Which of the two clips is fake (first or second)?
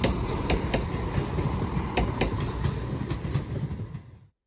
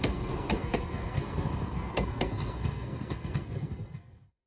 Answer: second